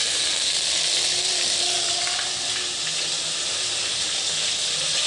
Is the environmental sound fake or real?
real